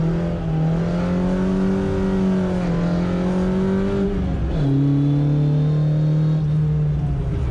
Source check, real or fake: real